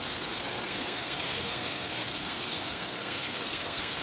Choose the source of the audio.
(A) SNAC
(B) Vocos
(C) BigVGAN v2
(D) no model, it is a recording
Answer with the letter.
A